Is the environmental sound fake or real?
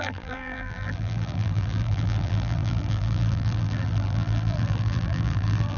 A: fake